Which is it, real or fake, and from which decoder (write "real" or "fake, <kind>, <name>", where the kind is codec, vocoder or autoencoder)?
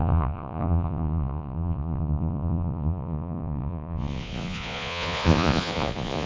fake, vocoder, Vocos